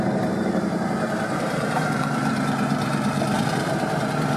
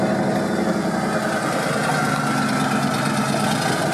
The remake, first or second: first